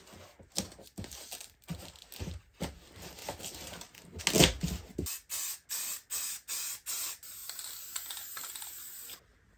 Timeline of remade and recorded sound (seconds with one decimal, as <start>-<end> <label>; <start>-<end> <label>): 0.0-7.4 recorded; 7.4-9.6 remade